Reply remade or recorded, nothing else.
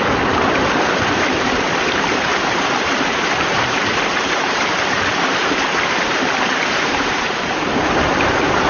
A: remade